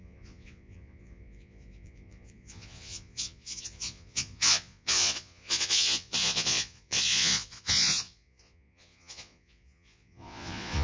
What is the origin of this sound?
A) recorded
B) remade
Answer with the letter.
B